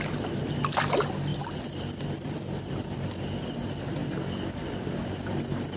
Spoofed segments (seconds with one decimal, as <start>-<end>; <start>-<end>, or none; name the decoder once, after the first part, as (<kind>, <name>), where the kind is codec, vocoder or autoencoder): none